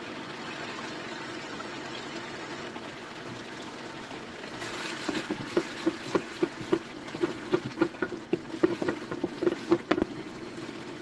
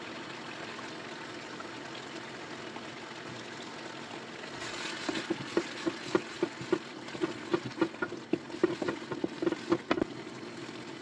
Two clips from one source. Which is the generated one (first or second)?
first